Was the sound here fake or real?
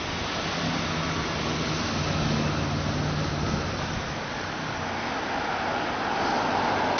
real